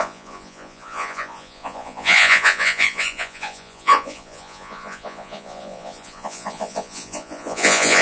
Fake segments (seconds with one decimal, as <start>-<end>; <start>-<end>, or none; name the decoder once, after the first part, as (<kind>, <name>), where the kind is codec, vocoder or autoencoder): 0.0-8.0 (vocoder, Vocos)